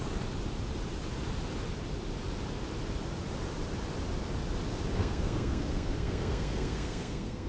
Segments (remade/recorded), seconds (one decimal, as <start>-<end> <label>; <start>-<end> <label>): 0.0-5.0 recorded; 5.0-7.5 remade